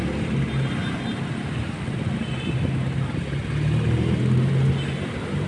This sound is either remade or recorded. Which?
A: recorded